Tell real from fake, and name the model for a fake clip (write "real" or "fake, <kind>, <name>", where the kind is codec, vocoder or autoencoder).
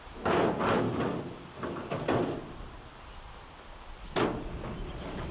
real